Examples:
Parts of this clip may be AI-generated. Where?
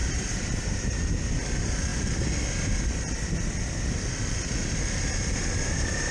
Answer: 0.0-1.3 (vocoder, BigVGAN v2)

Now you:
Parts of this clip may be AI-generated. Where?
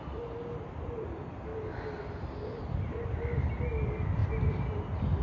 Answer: none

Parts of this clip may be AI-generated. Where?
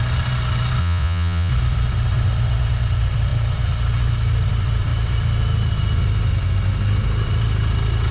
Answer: 0.8-1.5 (vocoder, Vocos)